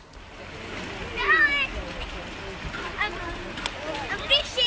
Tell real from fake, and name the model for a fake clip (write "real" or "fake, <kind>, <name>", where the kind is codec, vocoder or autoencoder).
real